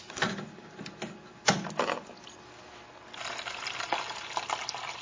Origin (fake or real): real